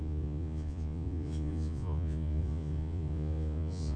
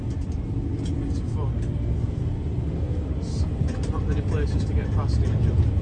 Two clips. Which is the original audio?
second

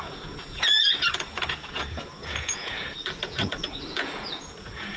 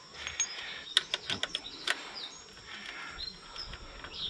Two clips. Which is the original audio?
second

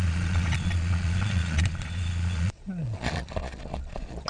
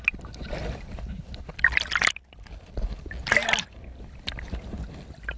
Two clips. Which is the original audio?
second